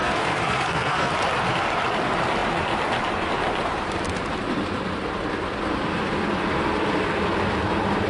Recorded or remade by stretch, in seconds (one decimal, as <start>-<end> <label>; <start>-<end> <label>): 0.0-1.1 remade; 1.1-8.1 recorded

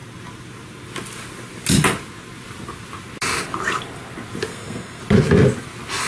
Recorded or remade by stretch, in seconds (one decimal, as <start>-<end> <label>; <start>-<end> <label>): 0.0-4.5 recorded; 4.5-5.0 remade; 5.0-6.1 recorded

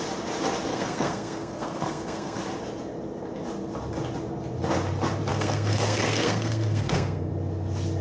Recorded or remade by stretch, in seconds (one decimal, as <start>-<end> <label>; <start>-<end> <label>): 0.0-0.7 recorded; 0.7-2.4 remade; 2.4-5.3 recorded; 5.3-7.3 remade; 7.3-8.0 recorded

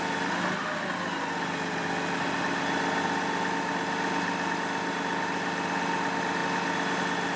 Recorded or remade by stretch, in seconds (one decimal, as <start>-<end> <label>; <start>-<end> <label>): 0.0-7.4 recorded